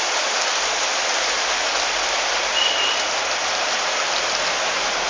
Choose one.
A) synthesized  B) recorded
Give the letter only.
B